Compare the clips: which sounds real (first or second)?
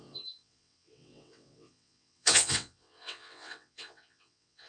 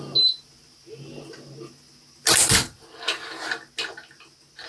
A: second